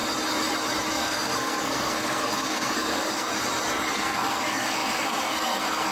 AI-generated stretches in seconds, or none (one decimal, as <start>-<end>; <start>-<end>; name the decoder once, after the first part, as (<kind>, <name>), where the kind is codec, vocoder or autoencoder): 0.9-3.3 (codec, SNAC); 3.9-5.9

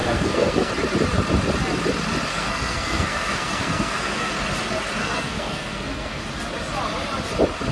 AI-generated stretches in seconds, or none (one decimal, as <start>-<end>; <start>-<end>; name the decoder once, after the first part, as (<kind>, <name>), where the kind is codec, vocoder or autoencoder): 0.0-0.7 (codec, SNAC); 2.3-4.3; 5.0-6.2

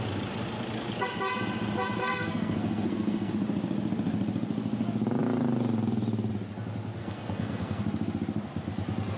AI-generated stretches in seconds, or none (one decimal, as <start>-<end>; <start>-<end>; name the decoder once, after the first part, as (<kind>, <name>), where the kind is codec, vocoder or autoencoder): 2.0-3.3 (codec, SNAC); 7.0-7.8

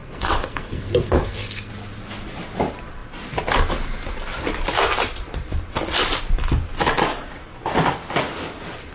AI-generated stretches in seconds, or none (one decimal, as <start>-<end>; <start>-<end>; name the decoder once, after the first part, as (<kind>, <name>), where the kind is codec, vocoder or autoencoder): 0.0-1.7 (codec, SNAC)

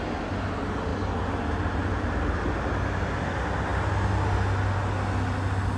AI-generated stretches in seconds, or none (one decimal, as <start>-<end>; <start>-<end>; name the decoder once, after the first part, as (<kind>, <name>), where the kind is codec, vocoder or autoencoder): none

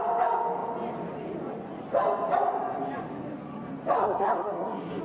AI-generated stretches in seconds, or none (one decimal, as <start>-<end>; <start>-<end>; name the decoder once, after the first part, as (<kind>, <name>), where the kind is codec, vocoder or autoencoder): 4.0-5.0 (codec, SNAC)

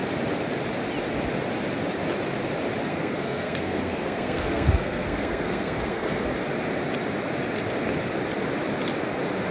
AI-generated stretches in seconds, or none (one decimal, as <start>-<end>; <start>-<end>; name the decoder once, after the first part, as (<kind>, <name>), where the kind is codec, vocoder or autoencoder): 2.9-6.3 (codec, SNAC)

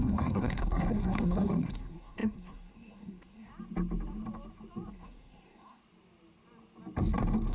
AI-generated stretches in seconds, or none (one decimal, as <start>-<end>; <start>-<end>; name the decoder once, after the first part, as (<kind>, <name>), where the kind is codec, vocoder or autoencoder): 0.0-3.5 (codec, SNAC); 4.9-5.8